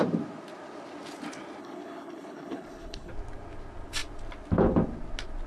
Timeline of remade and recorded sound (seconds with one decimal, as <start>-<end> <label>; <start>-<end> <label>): 0.0-1.6 recorded; 1.6-3.1 remade; 3.1-5.5 recorded